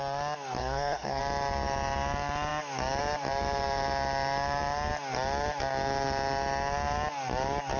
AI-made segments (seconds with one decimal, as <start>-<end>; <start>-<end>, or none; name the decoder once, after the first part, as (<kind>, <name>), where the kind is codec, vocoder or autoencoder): 0.6-1.2 (codec, SNAC)